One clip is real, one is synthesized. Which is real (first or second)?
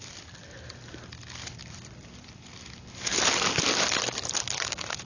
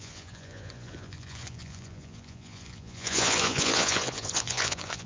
first